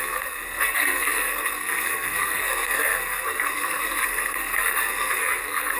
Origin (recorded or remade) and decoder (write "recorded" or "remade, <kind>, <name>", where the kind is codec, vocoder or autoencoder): remade, codec, SNAC